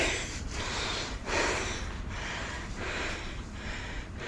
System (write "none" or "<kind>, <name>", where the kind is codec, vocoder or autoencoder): vocoder, BigVGAN v2